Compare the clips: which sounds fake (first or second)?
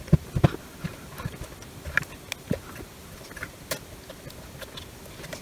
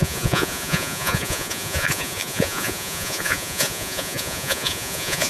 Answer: second